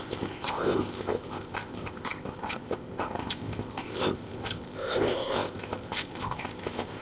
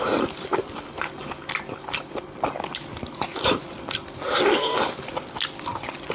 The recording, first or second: second